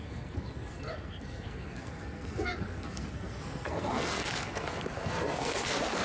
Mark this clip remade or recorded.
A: remade